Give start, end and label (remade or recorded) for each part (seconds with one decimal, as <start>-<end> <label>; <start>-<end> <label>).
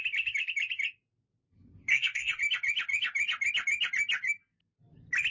0.0-1.9 recorded; 1.9-2.4 remade; 2.4-5.3 recorded